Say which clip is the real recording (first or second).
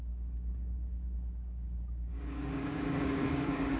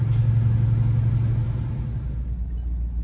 second